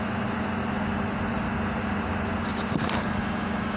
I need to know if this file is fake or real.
real